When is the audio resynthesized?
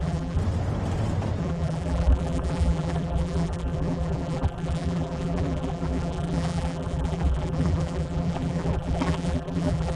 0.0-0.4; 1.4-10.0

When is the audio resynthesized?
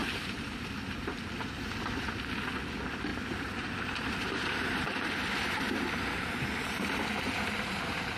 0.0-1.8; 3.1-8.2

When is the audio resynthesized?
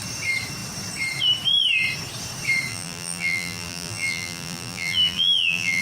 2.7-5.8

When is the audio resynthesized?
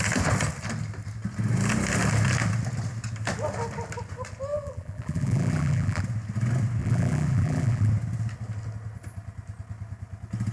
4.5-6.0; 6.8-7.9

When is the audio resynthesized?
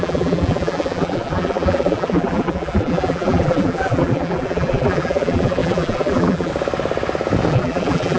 0.0-6.5; 7.5-8.2